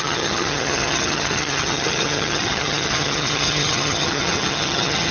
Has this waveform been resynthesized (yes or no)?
yes